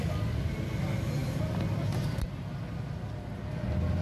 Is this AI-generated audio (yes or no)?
no